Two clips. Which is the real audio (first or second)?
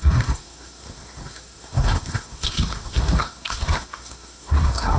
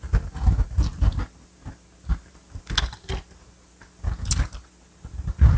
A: second